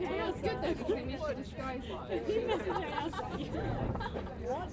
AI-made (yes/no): no